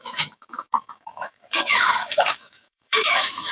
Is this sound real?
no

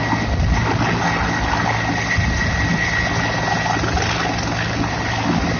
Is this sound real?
yes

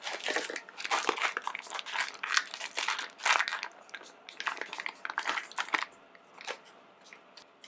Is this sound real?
yes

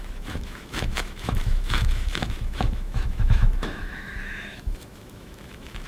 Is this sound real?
no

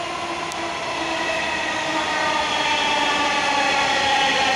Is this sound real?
yes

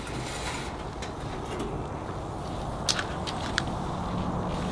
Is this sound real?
yes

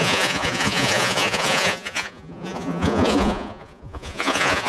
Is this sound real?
no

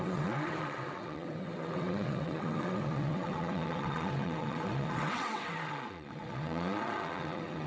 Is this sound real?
no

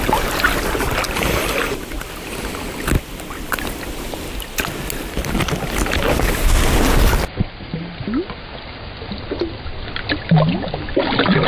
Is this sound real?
yes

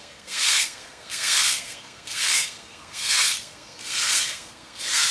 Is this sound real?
no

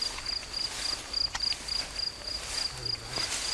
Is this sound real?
yes